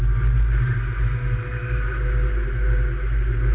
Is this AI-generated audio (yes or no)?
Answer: no